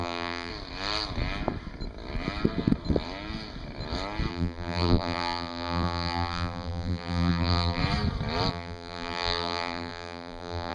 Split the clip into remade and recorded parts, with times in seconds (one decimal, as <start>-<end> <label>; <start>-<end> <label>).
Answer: 0.0-0.5 remade; 0.5-4.3 recorded; 4.3-7.8 remade; 7.8-8.5 recorded; 8.5-10.7 remade